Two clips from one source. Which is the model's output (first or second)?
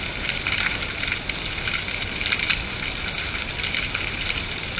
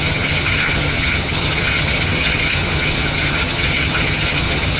second